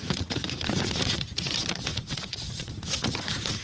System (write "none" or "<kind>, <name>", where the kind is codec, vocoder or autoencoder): vocoder, Vocos